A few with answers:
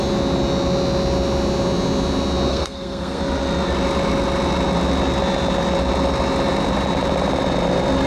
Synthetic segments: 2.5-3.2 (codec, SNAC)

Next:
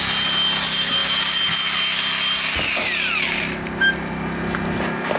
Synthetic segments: none